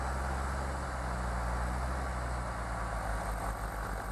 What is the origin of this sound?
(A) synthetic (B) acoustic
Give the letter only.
B